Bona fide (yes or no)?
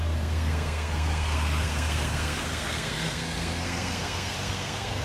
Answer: no